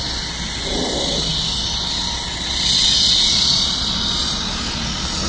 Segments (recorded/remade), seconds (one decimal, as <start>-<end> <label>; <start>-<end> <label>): 0.0-5.3 recorded